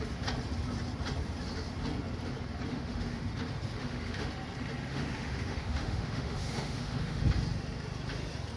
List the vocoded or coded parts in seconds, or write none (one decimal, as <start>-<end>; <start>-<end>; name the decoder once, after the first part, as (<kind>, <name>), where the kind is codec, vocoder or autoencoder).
2.7-3.2 (autoencoder, DAC-VAE); 3.8-4.3; 4.9-7.2